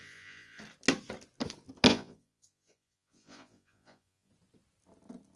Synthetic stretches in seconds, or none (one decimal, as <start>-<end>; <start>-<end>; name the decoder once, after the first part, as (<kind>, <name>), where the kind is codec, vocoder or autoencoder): 0.0-0.6 (vocoder, Vocos); 1.9-4.3